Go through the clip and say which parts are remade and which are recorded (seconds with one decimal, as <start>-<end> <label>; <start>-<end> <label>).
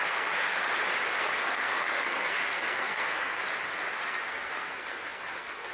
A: 0.0-0.6 remade; 0.6-1.2 recorded; 1.2-3.4 remade; 3.4-4.0 recorded; 4.0-5.7 remade